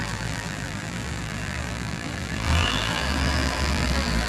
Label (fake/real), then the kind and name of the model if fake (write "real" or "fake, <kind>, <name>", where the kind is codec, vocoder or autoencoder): fake, vocoder, BigVGAN v2